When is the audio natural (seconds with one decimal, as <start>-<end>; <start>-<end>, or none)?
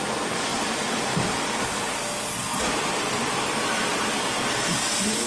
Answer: 0.0-0.5; 1.8-2.5; 3.3-5.3